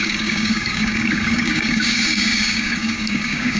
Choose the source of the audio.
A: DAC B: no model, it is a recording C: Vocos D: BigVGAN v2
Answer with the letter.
A